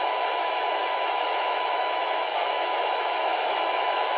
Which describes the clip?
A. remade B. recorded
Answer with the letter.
A